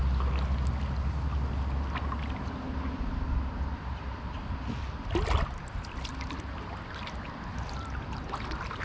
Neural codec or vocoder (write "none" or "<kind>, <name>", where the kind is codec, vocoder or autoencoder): none